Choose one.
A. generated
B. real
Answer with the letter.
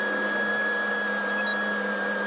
B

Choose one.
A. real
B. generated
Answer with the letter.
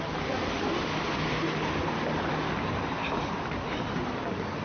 A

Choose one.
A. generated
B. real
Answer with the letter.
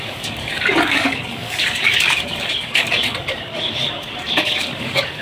A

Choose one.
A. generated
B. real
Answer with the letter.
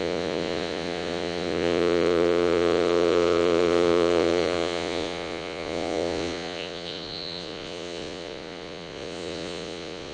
A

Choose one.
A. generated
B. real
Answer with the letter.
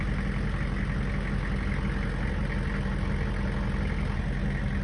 B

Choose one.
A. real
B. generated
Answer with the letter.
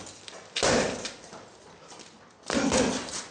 A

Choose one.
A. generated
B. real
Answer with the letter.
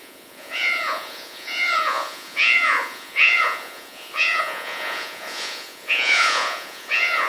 A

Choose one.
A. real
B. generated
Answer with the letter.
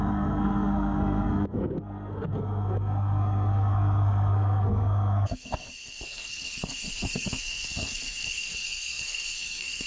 B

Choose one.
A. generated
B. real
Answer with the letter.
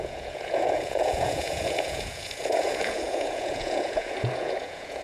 A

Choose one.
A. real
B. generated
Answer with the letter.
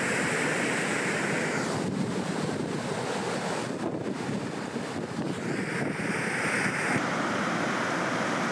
A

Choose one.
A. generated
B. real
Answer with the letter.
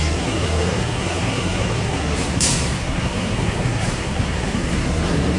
A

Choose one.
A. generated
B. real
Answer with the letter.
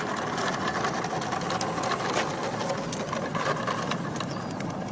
B